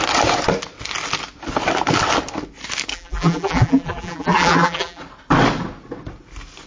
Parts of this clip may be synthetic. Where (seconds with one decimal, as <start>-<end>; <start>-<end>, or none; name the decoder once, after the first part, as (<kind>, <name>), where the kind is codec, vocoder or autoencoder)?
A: 2.9-5.0 (vocoder, BigVGAN v2)